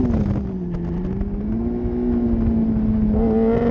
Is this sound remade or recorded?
recorded